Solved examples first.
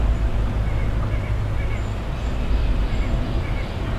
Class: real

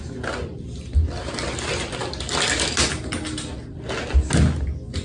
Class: real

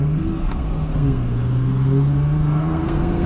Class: fake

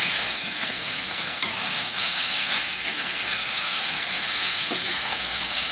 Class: fake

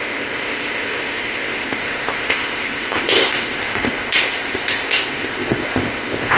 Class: fake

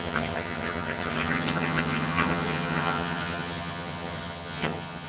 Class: fake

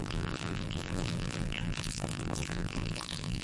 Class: fake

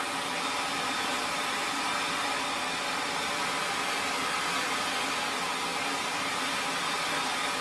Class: real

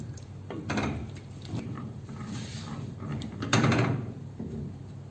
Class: fake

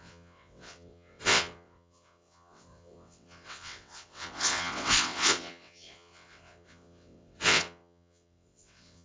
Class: fake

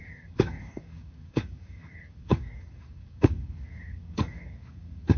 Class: fake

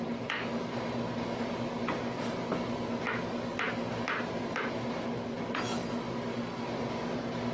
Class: real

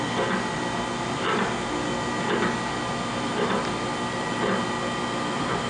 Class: real